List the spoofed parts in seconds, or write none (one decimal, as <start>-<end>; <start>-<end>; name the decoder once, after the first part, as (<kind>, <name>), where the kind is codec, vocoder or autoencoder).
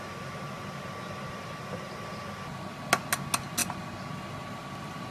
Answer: none